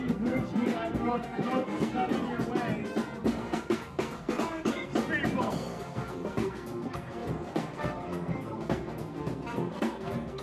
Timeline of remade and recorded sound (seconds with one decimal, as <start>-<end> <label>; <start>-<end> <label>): 0.0-2.1 remade; 2.1-3.2 recorded; 3.2-4.9 remade; 4.9-5.4 recorded; 5.4-10.4 remade